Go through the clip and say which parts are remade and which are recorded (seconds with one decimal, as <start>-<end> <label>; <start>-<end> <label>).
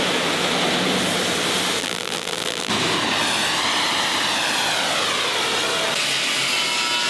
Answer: 0.0-1.8 recorded; 1.8-2.7 remade; 2.7-7.1 recorded